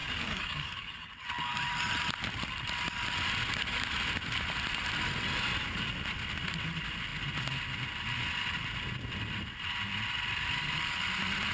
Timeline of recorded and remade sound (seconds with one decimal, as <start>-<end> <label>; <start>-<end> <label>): 0.0-1.1 remade; 1.1-11.5 recorded